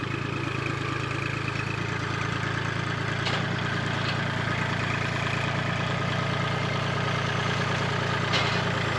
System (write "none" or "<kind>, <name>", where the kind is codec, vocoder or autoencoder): none